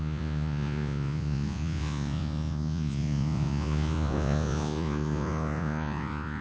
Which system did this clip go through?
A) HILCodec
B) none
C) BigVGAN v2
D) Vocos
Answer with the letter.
D